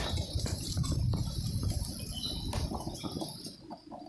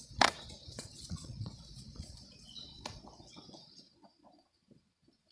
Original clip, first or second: first